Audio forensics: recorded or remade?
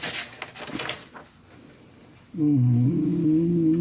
recorded